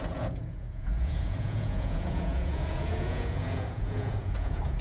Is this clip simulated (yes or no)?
yes